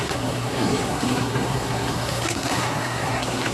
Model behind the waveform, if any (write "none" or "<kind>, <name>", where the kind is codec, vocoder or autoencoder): codec, SNAC